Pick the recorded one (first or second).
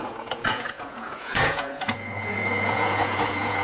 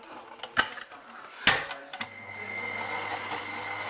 second